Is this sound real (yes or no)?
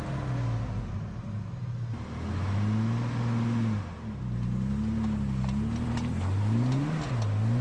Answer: yes